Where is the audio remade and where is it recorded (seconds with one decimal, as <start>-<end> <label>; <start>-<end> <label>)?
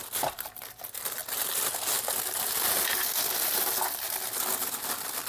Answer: 0.0-5.3 recorded